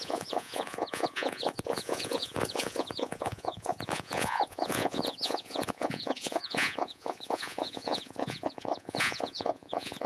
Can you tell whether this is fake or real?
fake